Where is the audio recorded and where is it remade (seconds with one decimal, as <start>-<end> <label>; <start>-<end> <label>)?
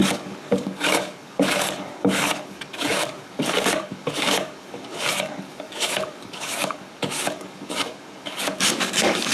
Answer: 0.0-9.3 remade